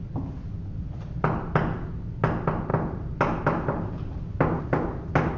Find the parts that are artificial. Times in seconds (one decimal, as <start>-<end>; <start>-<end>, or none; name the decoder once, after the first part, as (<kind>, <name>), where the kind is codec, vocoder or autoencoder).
none